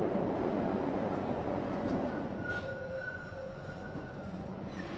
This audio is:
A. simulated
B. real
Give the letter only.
A